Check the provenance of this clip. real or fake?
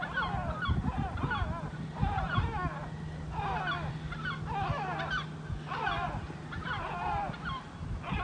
real